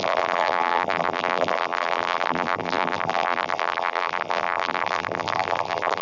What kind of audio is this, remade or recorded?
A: remade